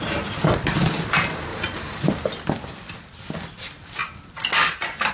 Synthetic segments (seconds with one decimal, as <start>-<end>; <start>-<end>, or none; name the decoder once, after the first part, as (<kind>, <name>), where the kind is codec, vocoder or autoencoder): 1.5-2.1 (vocoder, BigVGAN v2)